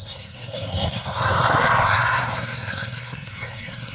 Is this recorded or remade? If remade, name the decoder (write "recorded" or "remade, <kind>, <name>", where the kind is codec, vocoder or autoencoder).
remade, codec, SNAC